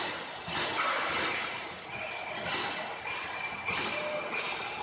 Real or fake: real